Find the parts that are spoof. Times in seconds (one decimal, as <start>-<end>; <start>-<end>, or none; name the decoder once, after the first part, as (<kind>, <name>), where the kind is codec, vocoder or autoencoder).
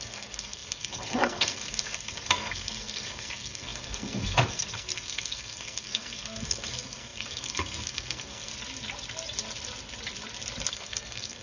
0.0-8.5 (codec, SNAC); 10.7-11.4